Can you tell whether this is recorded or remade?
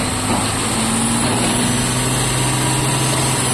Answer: recorded